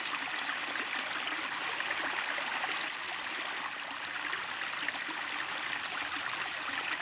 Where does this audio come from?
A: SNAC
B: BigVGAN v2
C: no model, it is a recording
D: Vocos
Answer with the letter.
C